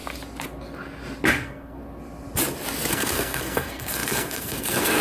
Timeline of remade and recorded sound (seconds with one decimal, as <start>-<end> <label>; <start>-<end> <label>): 0.0-1.3 recorded; 1.3-1.8 remade; 1.8-2.9 recorded; 2.9-5.0 remade